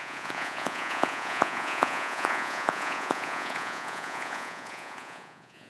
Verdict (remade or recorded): remade